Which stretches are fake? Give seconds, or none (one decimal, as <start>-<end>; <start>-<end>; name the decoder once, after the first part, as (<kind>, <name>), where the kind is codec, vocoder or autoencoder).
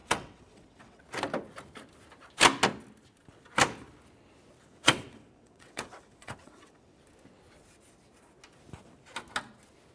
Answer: 0.0-1.0 (vocoder, WaveNeXt); 4.6-7.0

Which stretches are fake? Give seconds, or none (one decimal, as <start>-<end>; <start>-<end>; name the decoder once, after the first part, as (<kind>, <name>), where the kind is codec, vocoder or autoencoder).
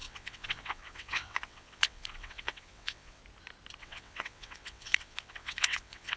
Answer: 0.0-3.2 (vocoder, WaveNeXt); 3.8-6.2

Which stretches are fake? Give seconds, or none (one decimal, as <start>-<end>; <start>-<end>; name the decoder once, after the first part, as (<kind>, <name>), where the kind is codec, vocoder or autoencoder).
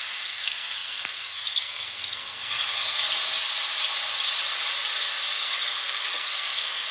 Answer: 0.0-3.1 (codec, SNAC); 5.3-6.9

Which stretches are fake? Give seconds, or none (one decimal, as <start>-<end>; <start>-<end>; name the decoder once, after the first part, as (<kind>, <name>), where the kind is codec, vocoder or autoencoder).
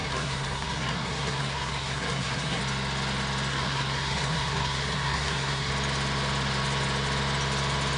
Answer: 0.0-2.6 (codec, SNAC); 3.5-5.7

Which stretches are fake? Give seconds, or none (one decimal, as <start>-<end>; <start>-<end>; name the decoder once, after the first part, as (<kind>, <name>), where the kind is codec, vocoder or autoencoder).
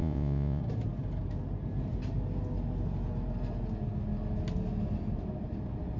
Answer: 0.0-0.6 (vocoder, Vocos)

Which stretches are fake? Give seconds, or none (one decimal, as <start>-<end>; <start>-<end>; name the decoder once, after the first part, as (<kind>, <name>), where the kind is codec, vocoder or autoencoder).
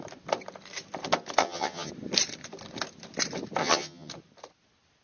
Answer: 1.4-1.9 (vocoder, HiFi-GAN); 3.6-4.1